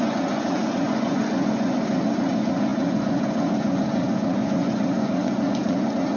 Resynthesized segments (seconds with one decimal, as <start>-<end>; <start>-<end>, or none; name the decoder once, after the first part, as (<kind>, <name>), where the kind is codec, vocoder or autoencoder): 0.0-6.2 (vocoder, Vocos)